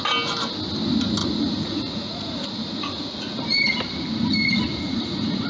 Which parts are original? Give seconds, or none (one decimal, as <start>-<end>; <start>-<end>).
0.0-1.2; 3.4-4.7